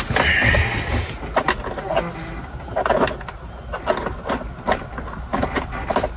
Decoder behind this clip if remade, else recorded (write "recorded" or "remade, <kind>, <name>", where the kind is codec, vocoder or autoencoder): recorded